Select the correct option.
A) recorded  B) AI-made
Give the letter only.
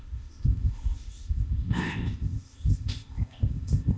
B